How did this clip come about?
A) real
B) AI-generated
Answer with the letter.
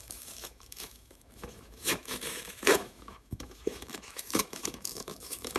B